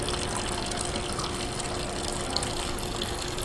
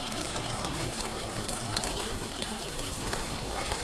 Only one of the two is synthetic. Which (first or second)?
second